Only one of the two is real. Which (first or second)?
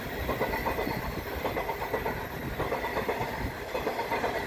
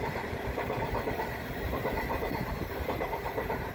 first